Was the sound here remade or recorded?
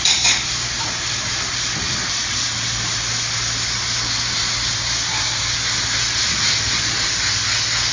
recorded